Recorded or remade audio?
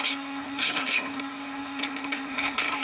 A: remade